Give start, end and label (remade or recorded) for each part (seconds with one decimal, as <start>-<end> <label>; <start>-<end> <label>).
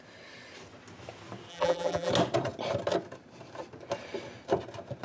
0.0-1.5 recorded; 1.5-2.1 remade; 2.1-5.0 recorded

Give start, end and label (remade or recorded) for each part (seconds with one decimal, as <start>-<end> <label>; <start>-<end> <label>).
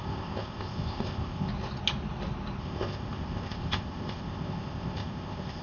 0.0-1.5 remade; 1.5-2.6 recorded; 2.6-5.6 remade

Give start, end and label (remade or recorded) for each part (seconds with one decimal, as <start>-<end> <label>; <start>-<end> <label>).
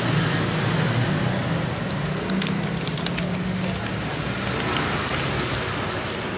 0.0-6.4 recorded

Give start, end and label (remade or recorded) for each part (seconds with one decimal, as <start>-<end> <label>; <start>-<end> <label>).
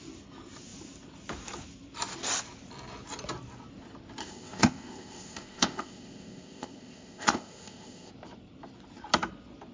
0.0-4.2 recorded; 4.2-8.1 remade; 8.1-9.7 recorded